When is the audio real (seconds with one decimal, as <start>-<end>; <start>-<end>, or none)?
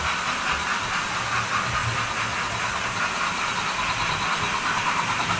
0.0-5.4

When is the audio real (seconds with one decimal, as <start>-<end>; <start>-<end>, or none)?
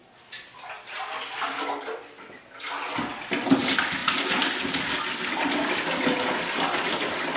0.0-7.4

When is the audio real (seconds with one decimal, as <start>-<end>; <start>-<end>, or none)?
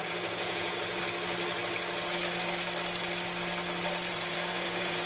1.0-4.1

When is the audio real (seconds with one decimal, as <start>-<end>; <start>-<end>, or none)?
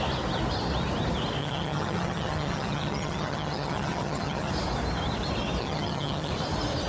0.0-1.4; 4.5-5.6; 6.3-6.9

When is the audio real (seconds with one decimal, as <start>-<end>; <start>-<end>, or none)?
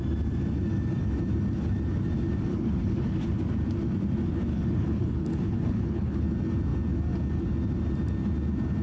0.0-2.5; 3.3-4.5; 6.2-8.8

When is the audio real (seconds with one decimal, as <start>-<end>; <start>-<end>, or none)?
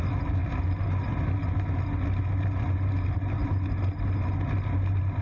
0.0-5.2